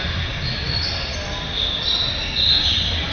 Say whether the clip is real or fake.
real